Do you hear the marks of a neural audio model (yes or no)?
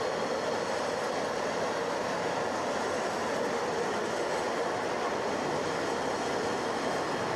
no